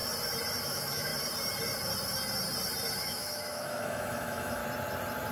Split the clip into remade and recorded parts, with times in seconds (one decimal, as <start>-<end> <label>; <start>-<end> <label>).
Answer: 0.0-0.6 recorded; 0.6-1.1 remade; 1.1-3.0 recorded; 3.0-4.6 remade; 4.6-5.3 recorded

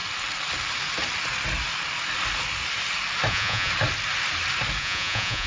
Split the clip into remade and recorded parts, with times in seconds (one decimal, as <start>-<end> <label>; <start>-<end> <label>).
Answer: 0.0-3.3 recorded; 3.3-3.7 remade; 3.7-4.8 recorded; 4.8-5.5 remade

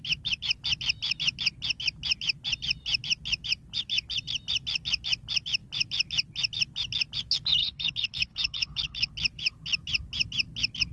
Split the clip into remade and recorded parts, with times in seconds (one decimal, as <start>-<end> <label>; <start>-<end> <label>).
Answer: 0.0-7.6 recorded; 7.6-9.1 remade; 9.1-10.9 recorded

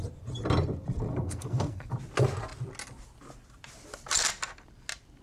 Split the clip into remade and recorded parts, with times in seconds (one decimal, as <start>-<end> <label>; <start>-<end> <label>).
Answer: 0.0-1.1 recorded; 1.1-1.9 remade; 1.9-5.2 recorded

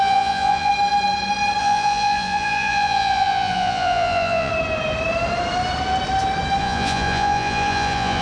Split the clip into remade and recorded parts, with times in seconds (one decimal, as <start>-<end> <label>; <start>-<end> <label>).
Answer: 0.0-0.7 remade; 0.7-1.6 recorded; 1.6-4.5 remade; 4.5-6.6 recorded; 6.6-8.2 remade

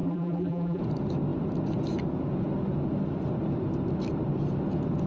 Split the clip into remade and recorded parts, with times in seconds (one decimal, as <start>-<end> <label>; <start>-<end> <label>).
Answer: 0.0-0.8 remade; 0.8-5.1 recorded

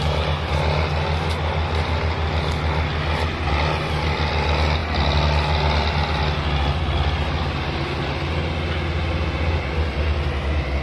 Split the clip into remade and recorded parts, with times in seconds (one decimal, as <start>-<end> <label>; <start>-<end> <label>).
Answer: 0.0-10.8 recorded

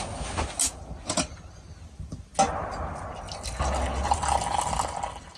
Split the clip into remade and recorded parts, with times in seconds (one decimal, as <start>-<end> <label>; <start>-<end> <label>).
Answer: 0.0-5.4 recorded